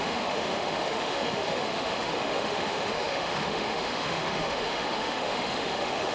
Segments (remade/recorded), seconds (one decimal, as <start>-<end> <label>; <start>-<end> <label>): 0.0-6.1 remade